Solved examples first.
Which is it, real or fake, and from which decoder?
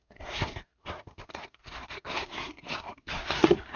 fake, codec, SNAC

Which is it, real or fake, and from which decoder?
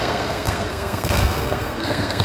fake, codec, SNAC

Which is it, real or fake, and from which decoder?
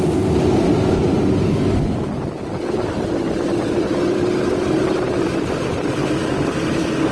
real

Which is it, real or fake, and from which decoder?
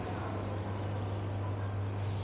real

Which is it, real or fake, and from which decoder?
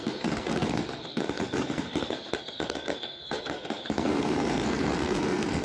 fake, codec, SNAC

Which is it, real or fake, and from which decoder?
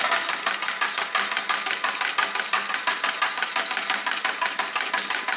real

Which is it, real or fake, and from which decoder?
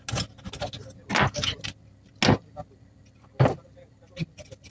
real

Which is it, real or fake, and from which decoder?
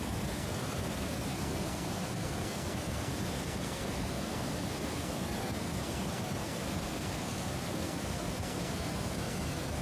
fake, codec, SNAC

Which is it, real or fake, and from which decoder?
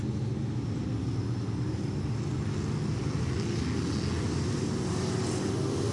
real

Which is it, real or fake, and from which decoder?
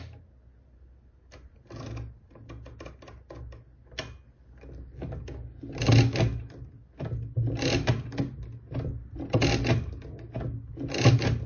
real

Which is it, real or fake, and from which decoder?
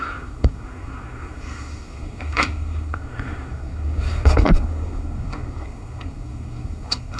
fake, codec, SNAC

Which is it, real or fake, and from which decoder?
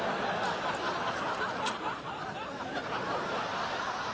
real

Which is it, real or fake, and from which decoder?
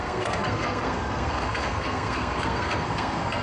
fake, codec, SNAC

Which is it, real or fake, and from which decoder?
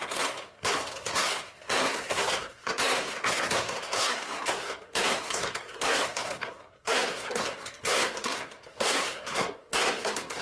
fake, codec, SNAC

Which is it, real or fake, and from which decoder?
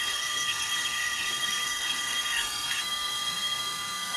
fake, codec, SNAC